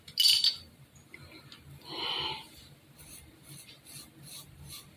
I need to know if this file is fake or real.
real